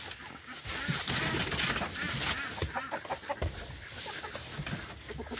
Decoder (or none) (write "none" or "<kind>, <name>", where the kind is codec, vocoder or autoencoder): none